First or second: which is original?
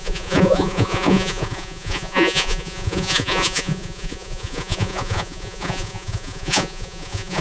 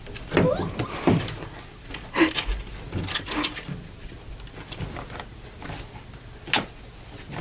second